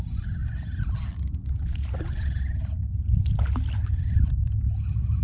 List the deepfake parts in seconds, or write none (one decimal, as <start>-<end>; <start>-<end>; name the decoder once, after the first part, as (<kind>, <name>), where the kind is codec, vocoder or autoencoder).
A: none